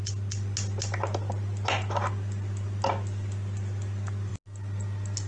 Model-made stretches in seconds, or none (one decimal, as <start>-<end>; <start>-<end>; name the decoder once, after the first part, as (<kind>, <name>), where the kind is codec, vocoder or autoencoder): none